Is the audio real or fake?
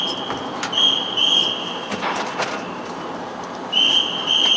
real